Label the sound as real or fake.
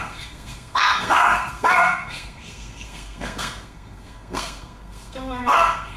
fake